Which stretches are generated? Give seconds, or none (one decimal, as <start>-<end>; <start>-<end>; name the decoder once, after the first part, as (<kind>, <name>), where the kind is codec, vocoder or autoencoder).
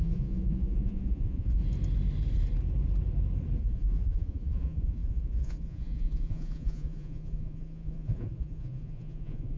0.0-1.6 (vocoder, Vocos); 3.6-9.6